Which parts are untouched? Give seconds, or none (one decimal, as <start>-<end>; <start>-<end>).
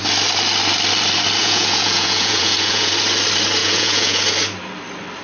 0.0-1.4; 2.9-3.6; 4.2-5.2